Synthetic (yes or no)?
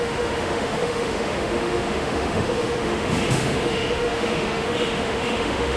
yes